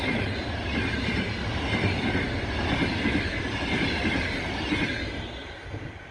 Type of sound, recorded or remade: recorded